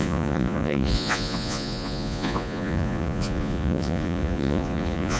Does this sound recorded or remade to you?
remade